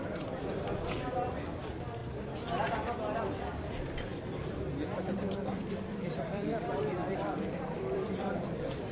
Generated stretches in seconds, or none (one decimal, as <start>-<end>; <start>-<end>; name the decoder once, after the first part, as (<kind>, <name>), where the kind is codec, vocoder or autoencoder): 0.0-2.0 (vocoder, BigVGAN v2); 3.2-8.9